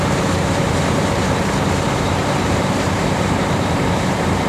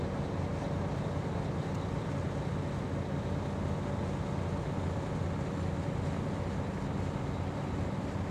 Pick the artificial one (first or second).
first